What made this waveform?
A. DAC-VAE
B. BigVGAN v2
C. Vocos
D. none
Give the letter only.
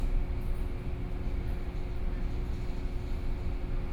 D